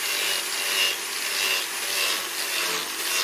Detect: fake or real real